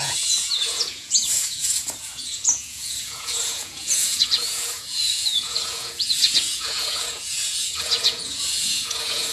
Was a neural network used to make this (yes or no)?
yes